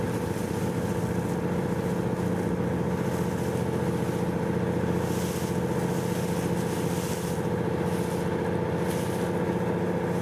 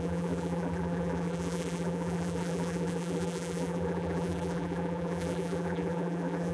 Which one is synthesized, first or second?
second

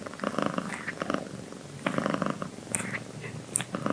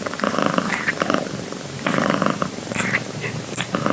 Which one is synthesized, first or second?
second